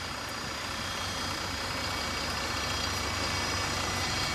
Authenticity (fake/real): real